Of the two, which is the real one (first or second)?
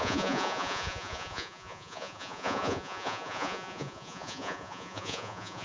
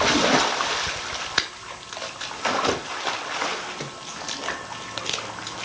second